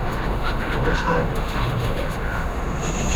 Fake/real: fake